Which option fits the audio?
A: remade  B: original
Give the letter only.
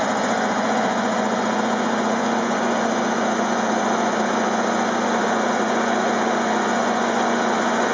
A